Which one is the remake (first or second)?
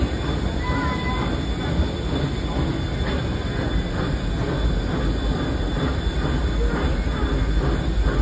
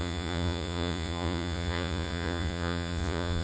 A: second